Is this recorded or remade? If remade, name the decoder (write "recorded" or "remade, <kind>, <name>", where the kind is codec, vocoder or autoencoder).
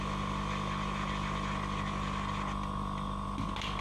recorded